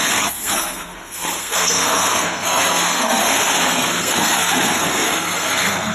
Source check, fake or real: fake